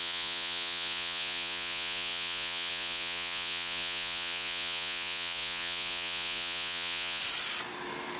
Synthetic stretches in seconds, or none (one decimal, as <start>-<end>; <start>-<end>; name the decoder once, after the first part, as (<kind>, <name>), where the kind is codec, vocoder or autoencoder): 0.0-7.2 (vocoder, Vocos)

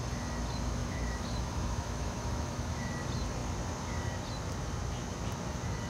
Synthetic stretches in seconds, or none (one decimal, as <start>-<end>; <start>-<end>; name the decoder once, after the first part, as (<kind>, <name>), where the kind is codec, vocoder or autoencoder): 0.8-2.9 (autoencoder, DAC-VAE)

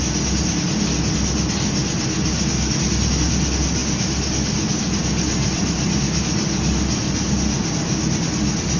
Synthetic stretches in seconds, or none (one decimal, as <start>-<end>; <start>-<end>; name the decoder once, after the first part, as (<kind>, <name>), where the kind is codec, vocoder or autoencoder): none

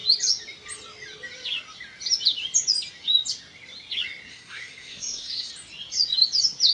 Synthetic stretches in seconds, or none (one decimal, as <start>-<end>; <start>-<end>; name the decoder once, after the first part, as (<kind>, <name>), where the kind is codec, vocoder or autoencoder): 4.3-5.5 (codec, SNAC)

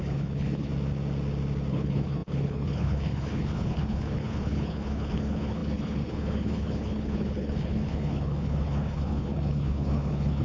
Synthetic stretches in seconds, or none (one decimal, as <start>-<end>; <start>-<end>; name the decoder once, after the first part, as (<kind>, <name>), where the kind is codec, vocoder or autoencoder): 0.0-0.7 (codec, HILCodec); 1.7-10.4

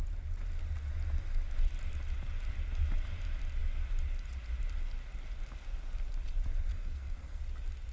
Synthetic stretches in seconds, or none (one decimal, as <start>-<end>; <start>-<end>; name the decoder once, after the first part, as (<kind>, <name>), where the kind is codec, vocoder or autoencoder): 6.7-7.4 (codec, SNAC)

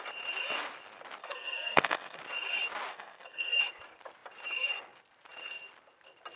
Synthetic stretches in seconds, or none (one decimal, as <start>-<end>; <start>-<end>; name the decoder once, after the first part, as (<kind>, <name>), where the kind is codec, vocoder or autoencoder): 1.2-2.2 (codec, SNAC); 2.9-3.6